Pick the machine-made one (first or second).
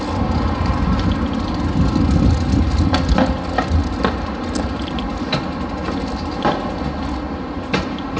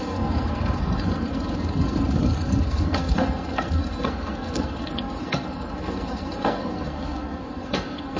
second